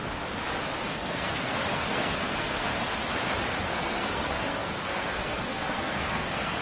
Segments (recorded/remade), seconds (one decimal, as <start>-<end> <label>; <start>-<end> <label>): 0.0-0.9 recorded; 0.9-2.7 remade; 2.7-3.6 recorded; 3.6-6.6 remade